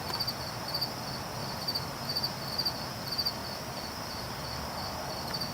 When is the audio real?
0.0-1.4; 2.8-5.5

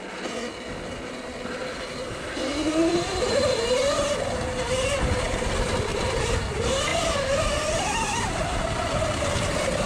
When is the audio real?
0.0-1.6; 3.8-5.9; 6.4-6.9; 9.0-9.9

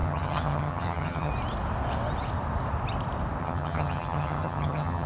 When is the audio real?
1.3-3.4

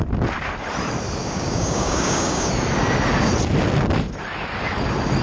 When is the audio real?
0.0-1.2; 2.5-5.2

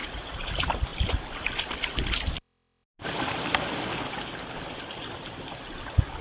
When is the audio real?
0.5-6.2

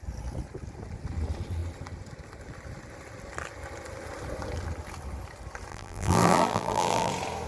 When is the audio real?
0.0-5.7; 7.1-7.5

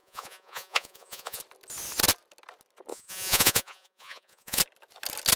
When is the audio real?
1.4-2.9; 4.6-5.4

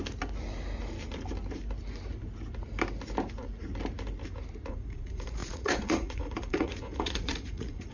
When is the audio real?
0.0-4.7